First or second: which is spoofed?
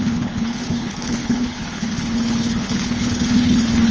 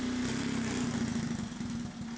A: first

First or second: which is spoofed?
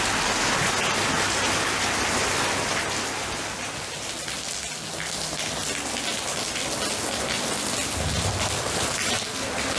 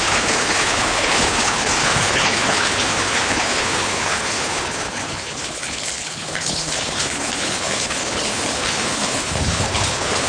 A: second